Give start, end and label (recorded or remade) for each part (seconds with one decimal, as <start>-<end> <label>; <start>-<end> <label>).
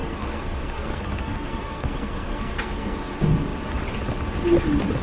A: 0.0-3.0 remade; 3.0-5.0 recorded